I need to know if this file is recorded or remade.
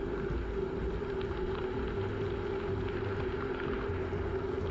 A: recorded